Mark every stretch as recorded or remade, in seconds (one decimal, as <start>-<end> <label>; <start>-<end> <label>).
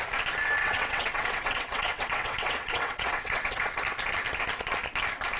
0.0-0.6 recorded; 0.6-3.8 remade; 3.8-5.4 recorded